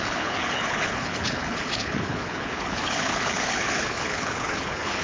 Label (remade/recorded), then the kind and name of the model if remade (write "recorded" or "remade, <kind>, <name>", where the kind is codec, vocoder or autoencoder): remade, codec, HILCodec